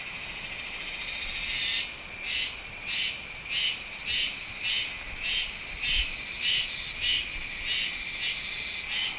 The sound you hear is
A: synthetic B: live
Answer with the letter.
B